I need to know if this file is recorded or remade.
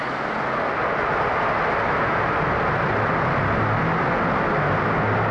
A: recorded